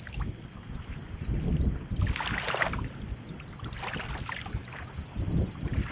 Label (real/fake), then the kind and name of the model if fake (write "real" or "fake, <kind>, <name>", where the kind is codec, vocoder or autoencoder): real